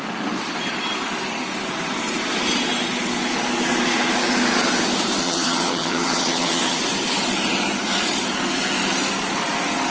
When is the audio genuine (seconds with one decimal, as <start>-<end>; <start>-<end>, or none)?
0.0-5.2; 6.8-9.9